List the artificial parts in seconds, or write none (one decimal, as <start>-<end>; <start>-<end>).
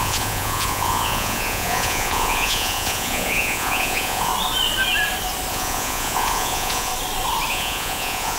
0.0-4.3; 5.5-6.9; 7.5-8.4